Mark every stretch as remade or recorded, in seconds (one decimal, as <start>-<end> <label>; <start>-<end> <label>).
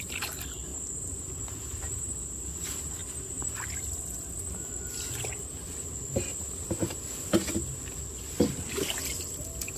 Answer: 0.0-6.4 recorded; 6.4-7.0 remade; 7.0-9.8 recorded